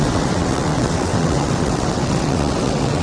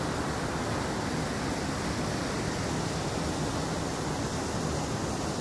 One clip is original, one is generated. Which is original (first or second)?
second